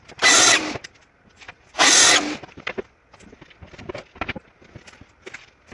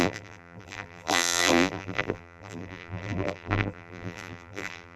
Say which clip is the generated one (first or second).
second